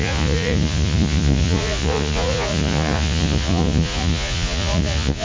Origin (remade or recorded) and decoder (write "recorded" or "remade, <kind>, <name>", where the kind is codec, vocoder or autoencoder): remade, vocoder, Vocos